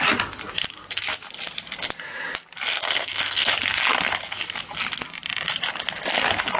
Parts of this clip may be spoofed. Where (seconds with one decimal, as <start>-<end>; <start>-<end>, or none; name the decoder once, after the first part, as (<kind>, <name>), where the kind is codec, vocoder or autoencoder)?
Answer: 2.7-3.5 (codec, SNAC)